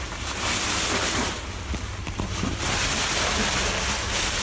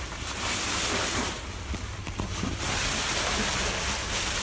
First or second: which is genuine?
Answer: first